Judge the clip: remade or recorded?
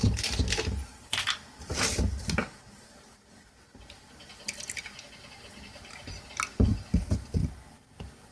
recorded